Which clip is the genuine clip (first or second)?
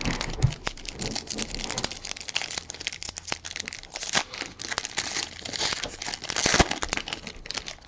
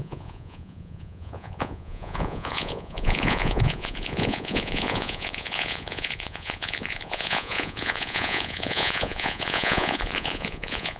first